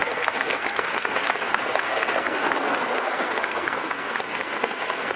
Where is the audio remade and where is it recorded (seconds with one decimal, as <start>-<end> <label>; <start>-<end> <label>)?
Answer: 0.0-5.2 remade